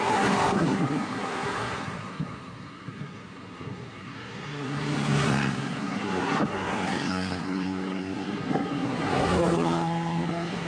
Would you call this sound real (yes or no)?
no